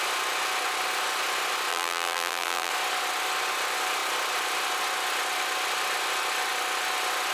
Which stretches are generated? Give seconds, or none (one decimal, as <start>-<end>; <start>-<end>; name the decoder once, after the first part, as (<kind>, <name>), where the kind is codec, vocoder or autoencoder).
1.7-2.7 (vocoder, BigVGAN v2)